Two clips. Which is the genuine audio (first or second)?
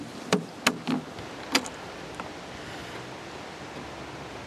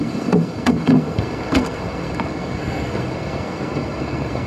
first